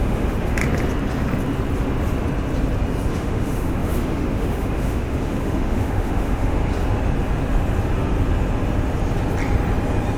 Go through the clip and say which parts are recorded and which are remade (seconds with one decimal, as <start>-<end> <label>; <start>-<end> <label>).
0.0-0.6 remade; 0.6-3.1 recorded; 3.1-6.6 remade; 6.6-10.2 recorded